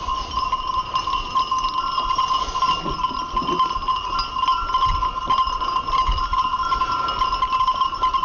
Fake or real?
real